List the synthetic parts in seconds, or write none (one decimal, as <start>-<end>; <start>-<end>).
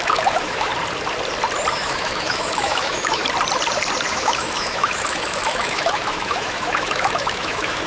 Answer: 0.0-0.7; 1.7-3.2; 4.1-7.9